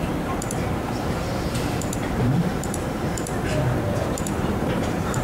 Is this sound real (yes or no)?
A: no